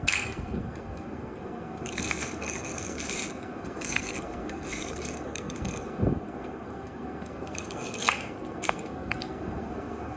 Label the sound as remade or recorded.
remade